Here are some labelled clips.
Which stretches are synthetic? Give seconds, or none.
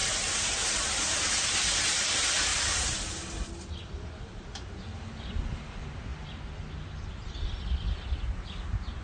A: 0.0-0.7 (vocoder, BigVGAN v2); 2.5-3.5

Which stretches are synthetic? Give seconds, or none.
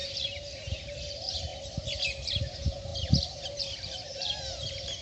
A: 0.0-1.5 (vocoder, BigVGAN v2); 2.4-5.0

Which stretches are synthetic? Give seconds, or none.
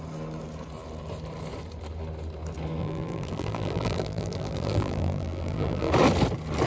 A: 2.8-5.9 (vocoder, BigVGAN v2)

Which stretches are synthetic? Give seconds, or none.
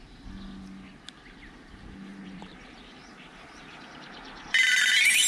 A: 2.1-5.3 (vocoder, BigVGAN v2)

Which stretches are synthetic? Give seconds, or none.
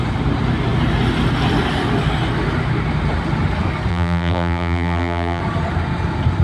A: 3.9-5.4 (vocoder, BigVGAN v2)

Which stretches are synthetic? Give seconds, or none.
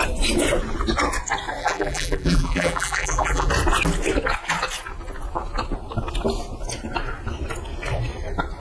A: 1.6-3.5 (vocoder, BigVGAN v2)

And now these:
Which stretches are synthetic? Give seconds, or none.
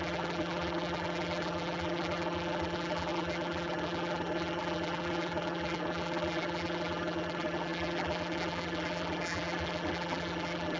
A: 0.0-10.8 (vocoder, BigVGAN v2)